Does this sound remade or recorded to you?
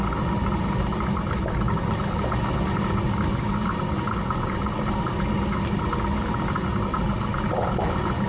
recorded